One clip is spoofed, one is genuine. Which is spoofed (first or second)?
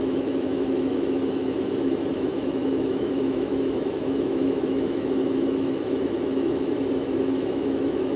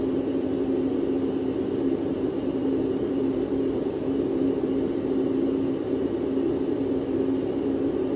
first